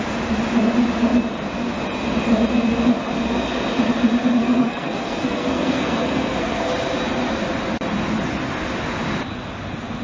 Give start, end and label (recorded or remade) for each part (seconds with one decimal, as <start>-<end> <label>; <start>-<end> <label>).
0.0-4.2 recorded; 4.2-6.7 remade; 6.7-10.0 recorded